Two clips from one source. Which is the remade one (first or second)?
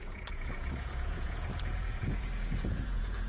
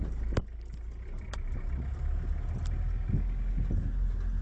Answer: first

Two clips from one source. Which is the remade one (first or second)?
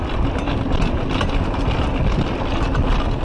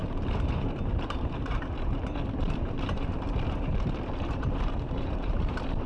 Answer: second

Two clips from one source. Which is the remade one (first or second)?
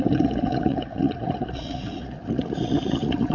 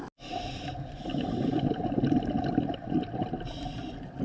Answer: first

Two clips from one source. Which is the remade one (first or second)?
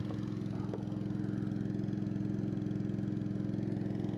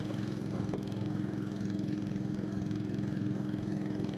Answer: second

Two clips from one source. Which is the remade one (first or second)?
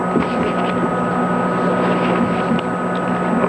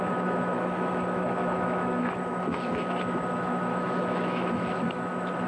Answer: second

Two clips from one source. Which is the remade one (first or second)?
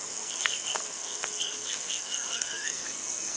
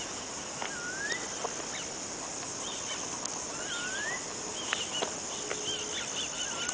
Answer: first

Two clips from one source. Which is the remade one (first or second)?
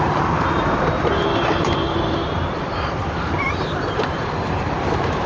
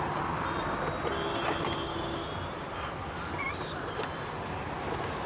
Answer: first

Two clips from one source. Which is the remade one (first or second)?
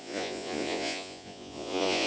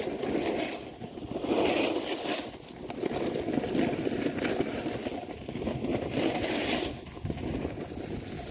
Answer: first